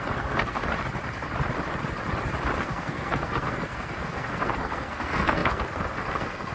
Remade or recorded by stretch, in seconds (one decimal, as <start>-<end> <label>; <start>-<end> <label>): 0.0-0.6 remade; 0.6-2.6 recorded; 2.6-6.5 remade